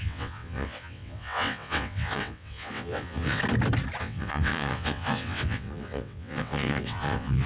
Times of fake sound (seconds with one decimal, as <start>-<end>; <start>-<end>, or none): 0.0-3.4; 4.0-7.5